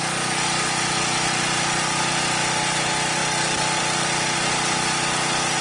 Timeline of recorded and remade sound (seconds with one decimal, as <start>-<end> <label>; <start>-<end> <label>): 0.0-5.6 recorded